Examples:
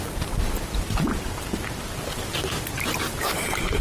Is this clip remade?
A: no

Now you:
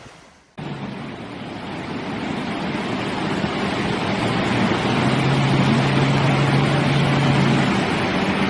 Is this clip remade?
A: no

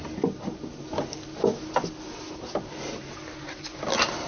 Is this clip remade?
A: no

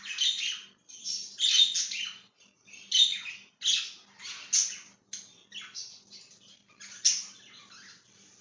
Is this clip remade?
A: no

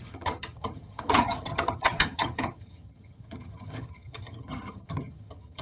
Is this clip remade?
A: yes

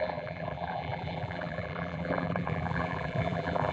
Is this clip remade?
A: yes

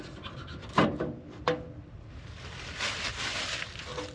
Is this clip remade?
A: no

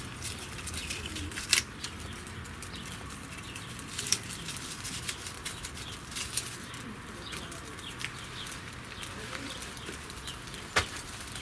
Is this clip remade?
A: yes